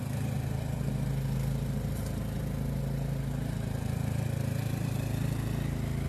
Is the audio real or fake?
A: real